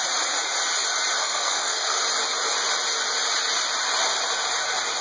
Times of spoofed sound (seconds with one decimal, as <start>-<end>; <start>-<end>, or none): 1.2-2.0